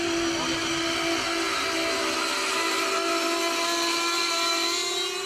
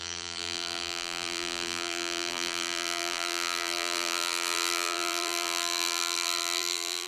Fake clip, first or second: second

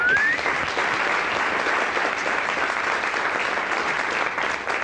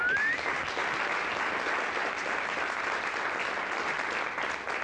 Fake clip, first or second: first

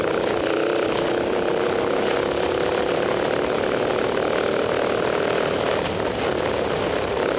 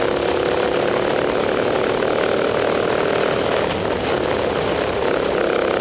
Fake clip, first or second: first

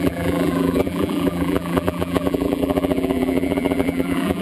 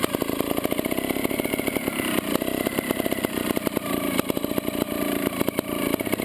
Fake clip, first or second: first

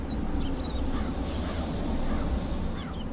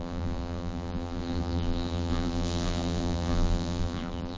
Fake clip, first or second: second